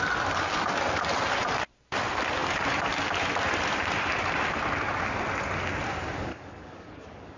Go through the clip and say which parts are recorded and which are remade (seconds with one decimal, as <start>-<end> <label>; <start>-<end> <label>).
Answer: 0.0-6.3 recorded; 6.3-7.4 remade